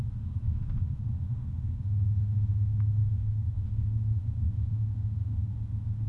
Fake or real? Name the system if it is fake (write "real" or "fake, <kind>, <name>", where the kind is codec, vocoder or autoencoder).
fake, autoencoder, DAC-VAE